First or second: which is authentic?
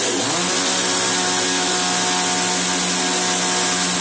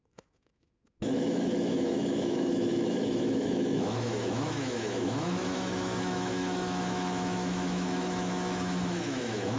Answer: first